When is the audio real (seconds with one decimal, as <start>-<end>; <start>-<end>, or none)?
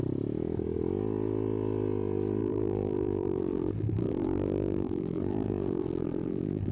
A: 0.0-2.4